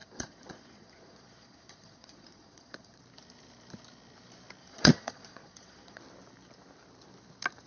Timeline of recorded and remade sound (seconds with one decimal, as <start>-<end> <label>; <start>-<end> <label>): 0.0-3.0 remade; 3.0-4.6 recorded; 4.6-6.0 remade; 6.0-7.7 recorded